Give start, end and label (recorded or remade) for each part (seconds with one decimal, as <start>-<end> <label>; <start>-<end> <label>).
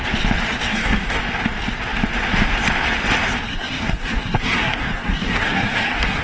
0.0-0.7 recorded; 0.7-1.2 remade; 1.2-3.5 recorded; 3.5-6.2 remade